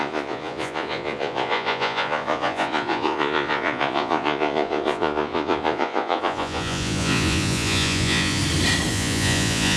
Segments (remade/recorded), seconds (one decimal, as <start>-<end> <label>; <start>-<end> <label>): 0.0-8.4 remade; 8.4-8.9 recorded; 8.9-9.8 remade